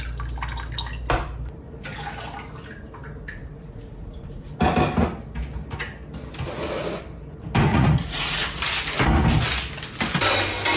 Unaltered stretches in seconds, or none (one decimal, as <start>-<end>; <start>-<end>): 0.0-3.2; 4.5-7.7; 8.6-10.8